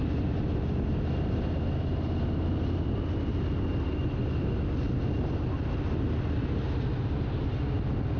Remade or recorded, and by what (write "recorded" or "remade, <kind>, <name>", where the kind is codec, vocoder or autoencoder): recorded